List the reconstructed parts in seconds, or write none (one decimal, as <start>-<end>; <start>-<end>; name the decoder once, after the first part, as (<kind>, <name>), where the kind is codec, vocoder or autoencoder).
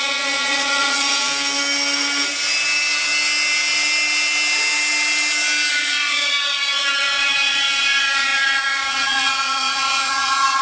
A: 0.0-1.3 (vocoder, Vocos); 5.7-10.6